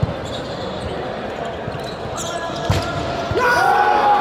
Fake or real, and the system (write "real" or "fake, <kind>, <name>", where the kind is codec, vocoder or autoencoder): real